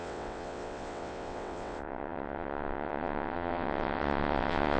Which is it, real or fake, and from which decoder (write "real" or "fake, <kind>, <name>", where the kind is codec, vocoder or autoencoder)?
fake, vocoder, WaveNeXt